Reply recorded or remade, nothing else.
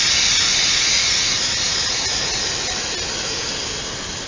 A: recorded